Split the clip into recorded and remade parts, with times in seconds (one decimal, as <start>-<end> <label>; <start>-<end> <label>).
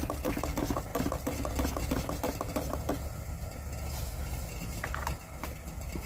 0.0-6.1 recorded